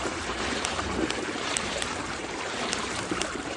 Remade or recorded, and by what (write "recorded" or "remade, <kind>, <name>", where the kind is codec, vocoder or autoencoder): remade, vocoder, BigVGAN v2